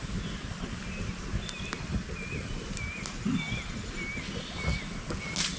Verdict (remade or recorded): recorded